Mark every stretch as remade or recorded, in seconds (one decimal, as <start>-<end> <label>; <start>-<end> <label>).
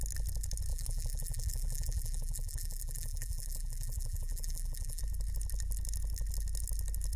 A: 0.0-0.7 recorded; 0.7-5.0 remade; 5.0-7.2 recorded